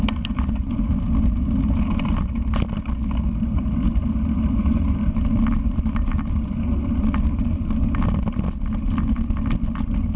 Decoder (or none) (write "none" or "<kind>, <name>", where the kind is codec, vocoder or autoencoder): none